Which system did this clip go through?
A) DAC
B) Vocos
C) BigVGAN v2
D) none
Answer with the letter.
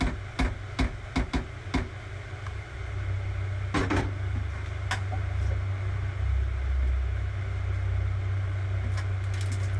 D